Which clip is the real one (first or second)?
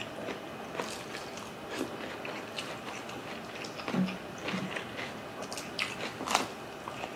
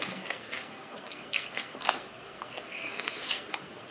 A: first